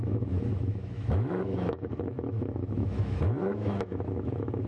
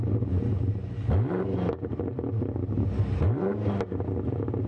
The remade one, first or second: first